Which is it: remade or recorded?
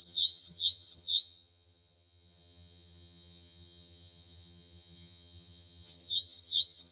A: remade